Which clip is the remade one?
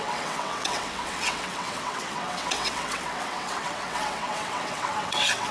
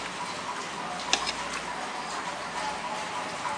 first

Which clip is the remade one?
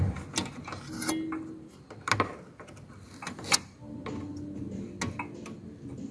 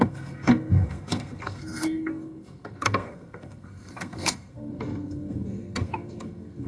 second